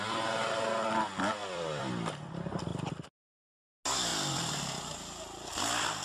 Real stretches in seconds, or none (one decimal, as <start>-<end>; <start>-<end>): 0.0-1.4; 1.9-4.1; 4.8-6.0

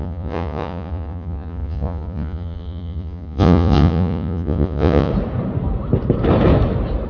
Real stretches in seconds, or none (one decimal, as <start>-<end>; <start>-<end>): 5.1-7.1

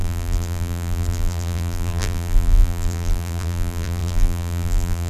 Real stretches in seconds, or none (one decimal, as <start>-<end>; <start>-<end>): none

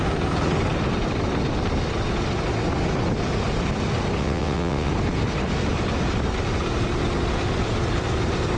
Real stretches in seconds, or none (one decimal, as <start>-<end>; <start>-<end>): 0.0-4.2; 4.9-8.6